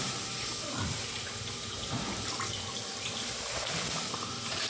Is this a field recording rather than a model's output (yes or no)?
no